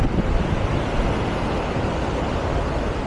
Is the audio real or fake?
real